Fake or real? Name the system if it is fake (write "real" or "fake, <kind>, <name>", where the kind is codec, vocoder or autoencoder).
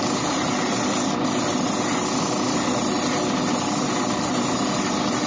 real